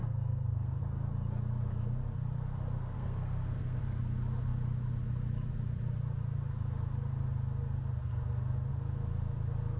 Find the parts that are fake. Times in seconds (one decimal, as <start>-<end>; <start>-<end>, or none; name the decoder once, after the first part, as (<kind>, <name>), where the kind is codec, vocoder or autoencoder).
0.0-0.8 (codec, SNAC); 2.8-3.8